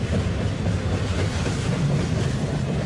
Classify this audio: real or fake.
real